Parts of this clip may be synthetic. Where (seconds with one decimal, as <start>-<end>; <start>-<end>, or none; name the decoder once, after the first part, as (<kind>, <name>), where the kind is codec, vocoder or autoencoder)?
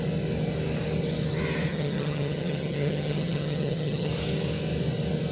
1.7-4.1 (vocoder, HiFi-GAN)